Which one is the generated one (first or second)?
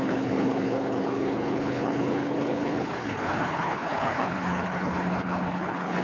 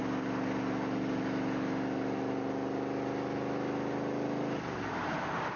first